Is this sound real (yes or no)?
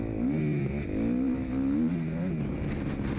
yes